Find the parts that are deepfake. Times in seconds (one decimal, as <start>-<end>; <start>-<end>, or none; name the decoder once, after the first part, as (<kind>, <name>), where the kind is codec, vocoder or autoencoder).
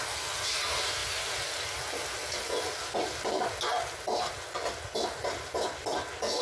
none